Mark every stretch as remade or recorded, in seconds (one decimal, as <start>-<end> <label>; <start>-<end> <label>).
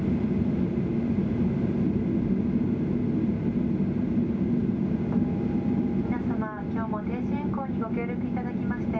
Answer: 0.0-9.0 recorded